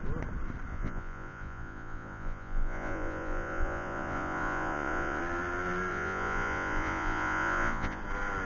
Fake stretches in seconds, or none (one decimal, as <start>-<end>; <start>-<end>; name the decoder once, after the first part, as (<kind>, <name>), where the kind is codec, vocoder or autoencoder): 0.7-5.2 (vocoder, Vocos); 5.9-8.0